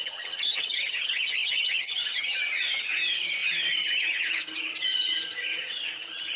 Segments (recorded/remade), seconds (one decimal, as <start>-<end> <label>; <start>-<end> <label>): 0.0-6.4 remade